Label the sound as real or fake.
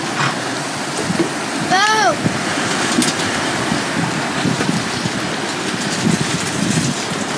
real